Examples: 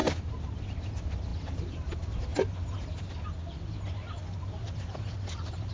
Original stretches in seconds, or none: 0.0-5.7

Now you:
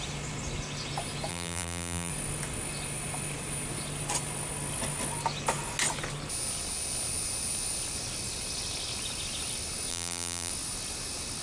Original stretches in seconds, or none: 0.0-1.3; 2.1-9.9; 10.5-11.4

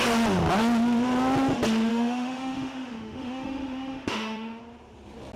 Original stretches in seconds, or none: 0.0-1.9; 4.6-5.4